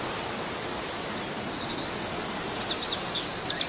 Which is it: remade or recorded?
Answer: recorded